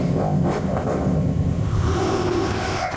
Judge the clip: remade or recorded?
remade